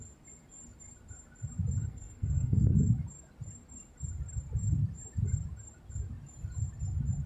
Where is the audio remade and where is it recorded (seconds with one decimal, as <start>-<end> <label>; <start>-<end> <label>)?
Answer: 0.0-1.8 recorded; 1.8-2.7 remade; 2.7-7.3 recorded